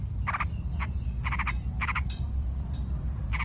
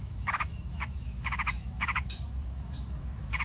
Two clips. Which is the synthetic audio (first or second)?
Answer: second